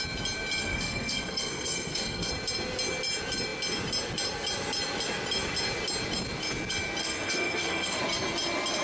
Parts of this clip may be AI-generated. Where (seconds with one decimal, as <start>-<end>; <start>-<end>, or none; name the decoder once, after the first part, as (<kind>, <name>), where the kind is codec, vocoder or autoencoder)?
0.6-2.3 (codec, SNAC); 7.0-8.0